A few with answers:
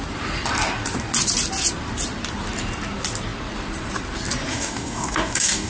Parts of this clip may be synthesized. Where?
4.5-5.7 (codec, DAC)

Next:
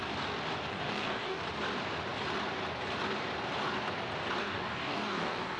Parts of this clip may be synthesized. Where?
0.7-1.4 (codec, DAC); 4.4-5.6

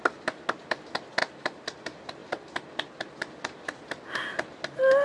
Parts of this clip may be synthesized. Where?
1.2-1.8 (vocoder, BigVGAN v2); 2.2-4.2

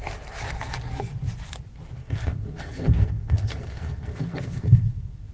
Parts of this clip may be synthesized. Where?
2.0-5.3 (codec, SNAC)

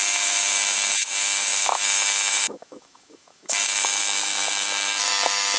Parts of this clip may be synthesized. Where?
0.0-5.6 (autoencoder, DAC-VAE)

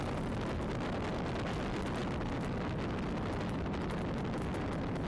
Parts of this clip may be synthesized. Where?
none

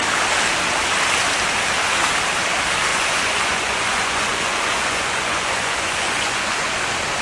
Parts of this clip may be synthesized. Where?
2.9-6.7 (vocoder, Vocos)